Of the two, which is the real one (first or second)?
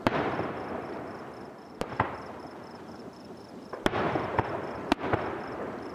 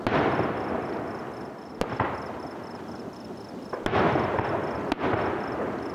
second